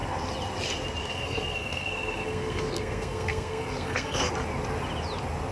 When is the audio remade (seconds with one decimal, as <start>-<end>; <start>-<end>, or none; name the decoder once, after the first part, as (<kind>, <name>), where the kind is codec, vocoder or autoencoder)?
1.0-4.3 (codec, SNAC)

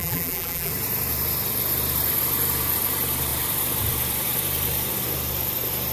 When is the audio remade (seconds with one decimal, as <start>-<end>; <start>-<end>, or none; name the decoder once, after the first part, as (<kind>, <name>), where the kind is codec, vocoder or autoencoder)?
0.0-0.7 (vocoder, BigVGAN v2)

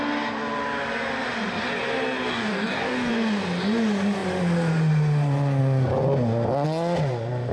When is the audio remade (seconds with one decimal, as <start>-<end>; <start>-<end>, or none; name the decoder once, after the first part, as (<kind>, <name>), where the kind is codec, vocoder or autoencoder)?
2.3-3.1 (codec, DAC)

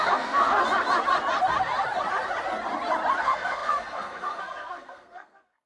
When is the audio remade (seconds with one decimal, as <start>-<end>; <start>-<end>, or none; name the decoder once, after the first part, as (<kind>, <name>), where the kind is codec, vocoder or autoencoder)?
0.0-0.6 (codec, SNAC); 3.2-5.7

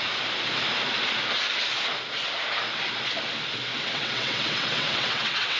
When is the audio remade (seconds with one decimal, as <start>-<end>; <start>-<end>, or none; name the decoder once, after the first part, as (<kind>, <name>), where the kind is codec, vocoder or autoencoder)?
3.7-5.6 (vocoder, WaveNeXt)